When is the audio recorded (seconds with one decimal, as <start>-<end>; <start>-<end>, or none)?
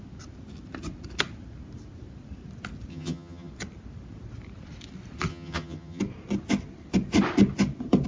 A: 0.0-2.9; 3.5-5.3; 6.0-8.1